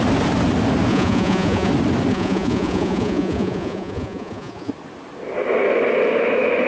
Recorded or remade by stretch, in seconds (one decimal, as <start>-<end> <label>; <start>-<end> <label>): 0.0-0.9 recorded; 0.9-1.7 remade; 1.7-2.1 recorded; 2.1-4.7 remade; 4.7-6.7 recorded

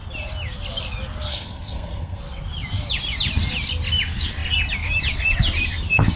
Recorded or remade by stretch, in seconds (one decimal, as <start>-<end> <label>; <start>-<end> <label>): 0.0-1.3 recorded; 1.3-2.2 remade; 2.2-6.2 recorded

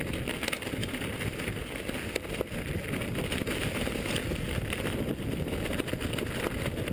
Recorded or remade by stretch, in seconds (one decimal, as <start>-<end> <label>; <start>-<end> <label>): 0.0-6.9 recorded

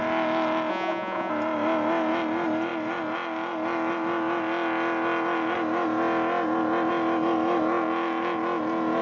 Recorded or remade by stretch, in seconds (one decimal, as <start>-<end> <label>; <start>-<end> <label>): 0.0-0.7 recorded; 0.7-1.3 remade; 1.3-9.0 recorded